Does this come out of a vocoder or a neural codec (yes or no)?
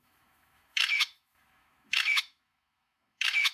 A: yes